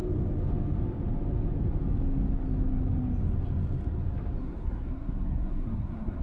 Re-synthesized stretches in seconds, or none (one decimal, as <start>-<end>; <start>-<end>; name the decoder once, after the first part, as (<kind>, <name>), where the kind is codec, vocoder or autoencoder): 4.4-6.2 (codec, SNAC)

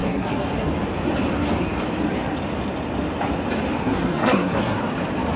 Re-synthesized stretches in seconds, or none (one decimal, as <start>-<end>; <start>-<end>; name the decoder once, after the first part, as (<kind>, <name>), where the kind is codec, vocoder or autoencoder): 0.0-0.7 (codec, SNAC); 3.8-4.8

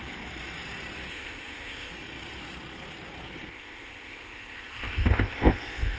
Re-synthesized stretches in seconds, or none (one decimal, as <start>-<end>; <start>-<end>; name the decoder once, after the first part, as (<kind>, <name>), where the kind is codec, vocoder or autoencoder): 1.1-1.9 (codec, ZipCodec); 3.5-6.0

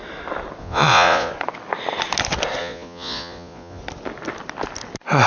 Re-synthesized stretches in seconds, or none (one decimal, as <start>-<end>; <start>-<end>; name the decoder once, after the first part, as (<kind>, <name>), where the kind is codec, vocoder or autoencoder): 0.6-1.3 (vocoder, Vocos); 2.6-3.8

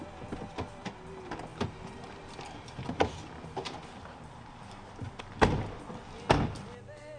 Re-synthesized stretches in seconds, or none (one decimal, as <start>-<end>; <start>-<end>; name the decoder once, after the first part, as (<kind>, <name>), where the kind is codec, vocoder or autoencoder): none

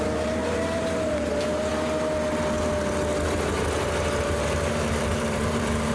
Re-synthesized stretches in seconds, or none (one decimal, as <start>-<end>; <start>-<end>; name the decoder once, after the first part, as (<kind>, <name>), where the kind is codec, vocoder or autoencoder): 0.0-1.7 (vocoder, BigVGAN v2); 4.2-5.9

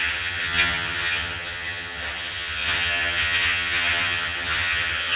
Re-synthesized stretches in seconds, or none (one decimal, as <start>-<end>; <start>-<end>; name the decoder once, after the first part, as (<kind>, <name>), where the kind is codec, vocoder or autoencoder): 0.0-5.2 (vocoder, HiFi-GAN)

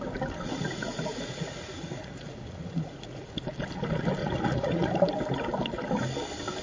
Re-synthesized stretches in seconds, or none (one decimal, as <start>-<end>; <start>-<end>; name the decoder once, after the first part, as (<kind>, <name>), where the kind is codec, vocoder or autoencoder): 0.5-3.3 (vocoder, Vocos); 4.2-4.9